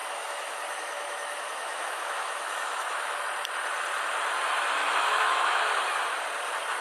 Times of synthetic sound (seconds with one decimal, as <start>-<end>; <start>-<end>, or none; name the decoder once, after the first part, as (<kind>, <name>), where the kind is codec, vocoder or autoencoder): 0.0-3.2 (autoencoder, DAC-VAE); 4.8-5.6